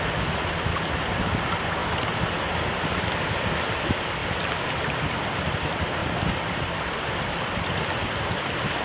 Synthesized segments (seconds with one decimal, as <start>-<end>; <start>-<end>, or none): 0.0-1.8; 2.7-4.2; 5.5-6.0; 6.8-8.8

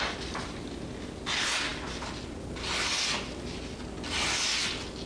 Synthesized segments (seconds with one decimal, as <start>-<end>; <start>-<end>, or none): none

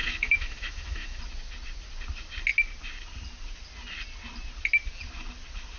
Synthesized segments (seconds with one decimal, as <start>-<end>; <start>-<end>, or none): 0.0-1.2

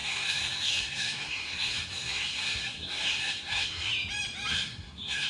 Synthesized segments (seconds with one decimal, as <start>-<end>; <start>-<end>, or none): 0.0-3.9; 4.5-5.3

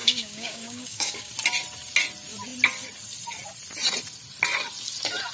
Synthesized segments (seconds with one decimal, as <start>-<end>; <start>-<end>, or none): 0.0-1.3

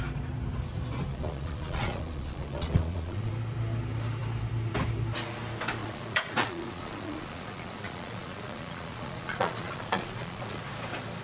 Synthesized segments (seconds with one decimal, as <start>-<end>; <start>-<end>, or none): 1.1-3.3; 5.8-10.6

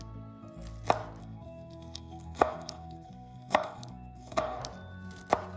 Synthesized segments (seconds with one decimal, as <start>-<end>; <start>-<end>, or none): 1.2-4.6

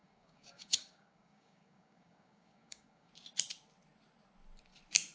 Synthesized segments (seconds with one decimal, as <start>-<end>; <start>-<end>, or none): 0.0-3.1